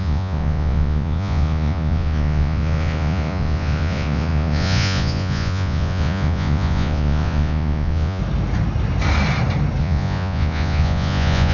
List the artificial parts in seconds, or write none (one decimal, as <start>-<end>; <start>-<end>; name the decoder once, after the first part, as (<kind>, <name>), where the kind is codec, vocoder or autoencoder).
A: 0.0-8.2 (vocoder, Vocos); 9.8-11.5